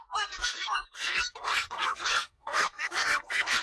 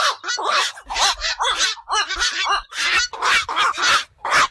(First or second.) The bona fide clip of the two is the second